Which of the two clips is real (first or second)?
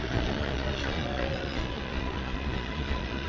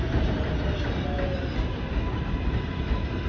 second